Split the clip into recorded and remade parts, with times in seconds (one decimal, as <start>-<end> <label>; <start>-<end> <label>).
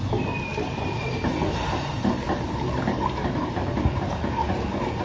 0.0-5.0 recorded